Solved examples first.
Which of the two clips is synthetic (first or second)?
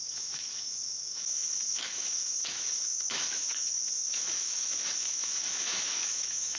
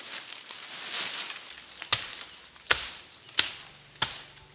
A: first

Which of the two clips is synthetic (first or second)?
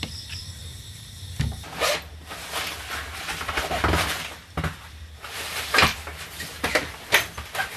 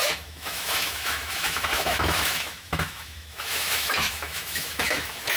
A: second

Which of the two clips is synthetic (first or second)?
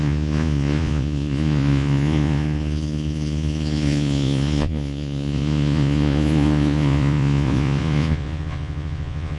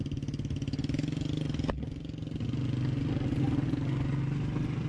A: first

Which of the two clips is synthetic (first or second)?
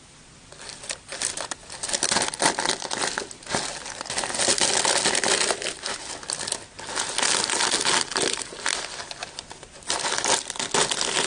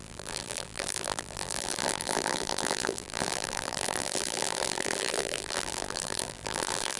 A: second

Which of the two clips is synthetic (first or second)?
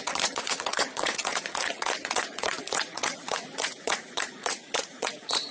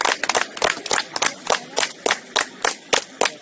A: first